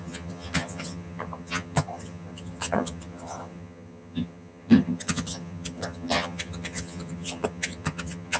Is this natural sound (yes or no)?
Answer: no